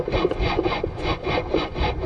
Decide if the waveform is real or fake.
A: fake